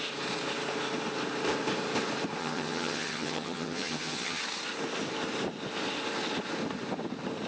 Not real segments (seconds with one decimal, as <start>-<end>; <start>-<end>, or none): 2.4-4.4